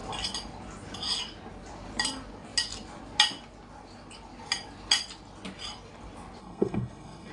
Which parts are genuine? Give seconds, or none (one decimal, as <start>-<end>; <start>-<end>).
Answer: 0.0-6.4